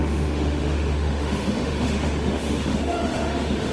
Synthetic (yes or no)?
yes